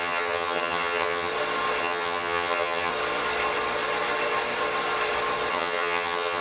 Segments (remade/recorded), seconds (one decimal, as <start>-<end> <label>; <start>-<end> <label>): 0.0-1.3 remade; 1.3-1.8 recorded; 1.8-2.9 remade; 2.9-5.5 recorded; 5.5-6.4 remade